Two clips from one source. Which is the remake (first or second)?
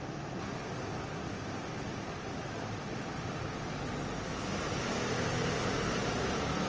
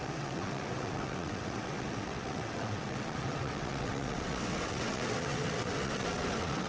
second